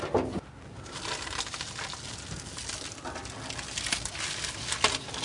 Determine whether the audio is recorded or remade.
recorded